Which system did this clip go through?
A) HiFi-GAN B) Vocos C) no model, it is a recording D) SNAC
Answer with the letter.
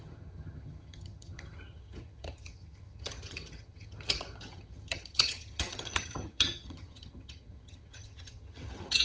A